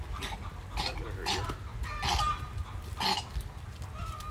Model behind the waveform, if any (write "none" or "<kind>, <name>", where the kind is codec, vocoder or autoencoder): none